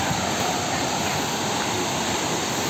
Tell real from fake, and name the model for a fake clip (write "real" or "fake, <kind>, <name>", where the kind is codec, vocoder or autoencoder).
real